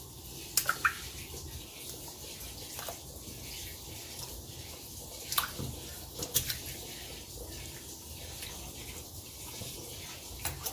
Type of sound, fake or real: real